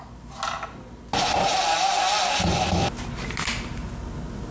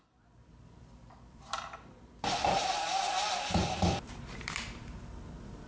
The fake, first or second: second